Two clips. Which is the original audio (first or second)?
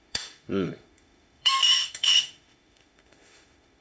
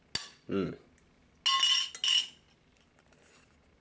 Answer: second